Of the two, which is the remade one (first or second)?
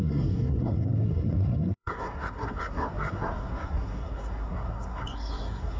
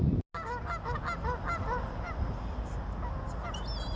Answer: first